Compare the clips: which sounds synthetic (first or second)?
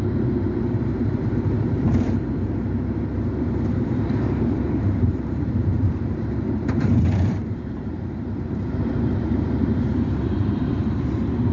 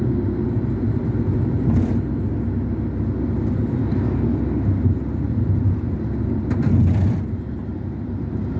first